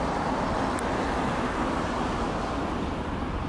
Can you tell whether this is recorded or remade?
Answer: recorded